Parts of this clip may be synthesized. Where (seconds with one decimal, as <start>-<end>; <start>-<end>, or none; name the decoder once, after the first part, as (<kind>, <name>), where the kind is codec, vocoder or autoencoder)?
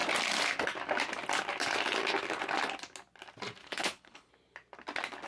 3.6-4.3 (codec, HILCodec)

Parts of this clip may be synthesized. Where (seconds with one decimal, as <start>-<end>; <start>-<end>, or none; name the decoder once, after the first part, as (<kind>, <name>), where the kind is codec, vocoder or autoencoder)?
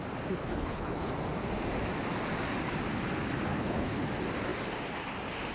0.4-1.1 (codec, HILCodec); 3.5-4.1